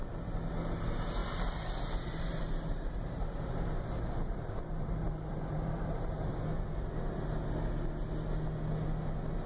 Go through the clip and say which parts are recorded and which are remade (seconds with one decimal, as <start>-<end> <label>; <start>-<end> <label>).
0.0-1.2 recorded; 1.2-6.1 remade; 6.1-9.5 recorded